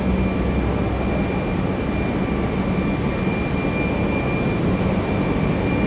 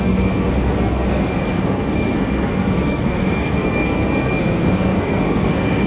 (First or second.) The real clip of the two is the first